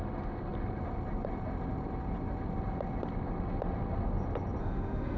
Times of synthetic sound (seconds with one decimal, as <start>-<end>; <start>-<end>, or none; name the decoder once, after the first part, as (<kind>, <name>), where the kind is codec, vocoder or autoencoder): 4.6-5.2 (autoencoder, DAC-VAE)